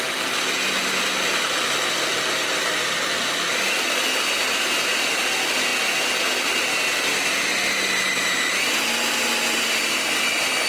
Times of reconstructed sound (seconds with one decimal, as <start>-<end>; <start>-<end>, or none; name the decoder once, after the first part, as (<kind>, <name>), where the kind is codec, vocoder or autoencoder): none